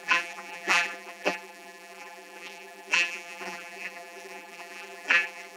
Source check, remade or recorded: remade